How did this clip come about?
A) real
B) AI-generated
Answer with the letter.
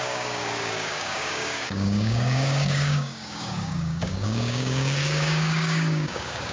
B